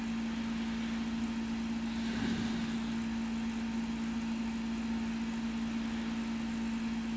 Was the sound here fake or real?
real